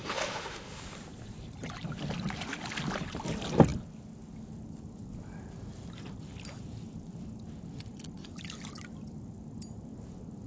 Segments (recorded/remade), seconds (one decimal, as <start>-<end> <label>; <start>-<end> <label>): 0.0-0.8 remade; 0.8-10.5 recorded